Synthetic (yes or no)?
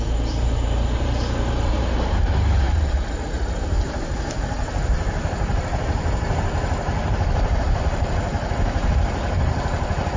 yes